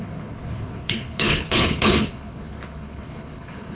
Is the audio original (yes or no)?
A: no